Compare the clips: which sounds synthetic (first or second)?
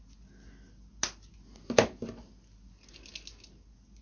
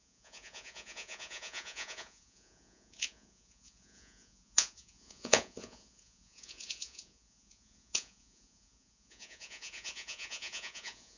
second